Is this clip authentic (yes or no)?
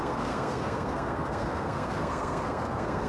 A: no